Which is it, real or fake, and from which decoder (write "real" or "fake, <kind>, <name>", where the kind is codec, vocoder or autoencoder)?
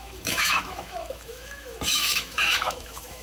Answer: fake, autoencoder, DAC-VAE